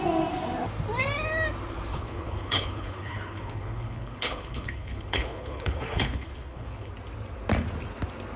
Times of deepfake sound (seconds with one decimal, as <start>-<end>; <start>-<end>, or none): 1.9-6.9